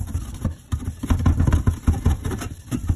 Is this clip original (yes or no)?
yes